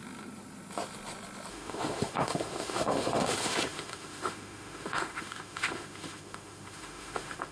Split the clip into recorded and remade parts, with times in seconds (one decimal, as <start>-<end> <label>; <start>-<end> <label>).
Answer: 0.0-1.5 recorded; 1.5-7.5 remade